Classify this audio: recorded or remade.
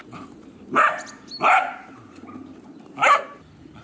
recorded